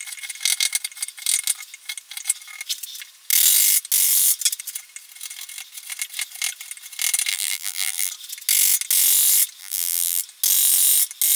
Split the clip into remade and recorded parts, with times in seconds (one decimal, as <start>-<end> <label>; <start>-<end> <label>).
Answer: 0.0-7.3 recorded; 7.3-8.1 remade; 8.1-9.6 recorded; 9.6-10.2 remade; 10.2-11.4 recorded